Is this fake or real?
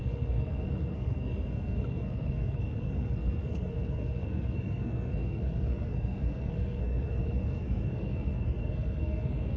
fake